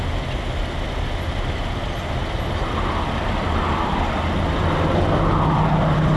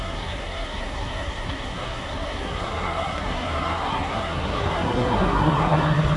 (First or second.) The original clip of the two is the first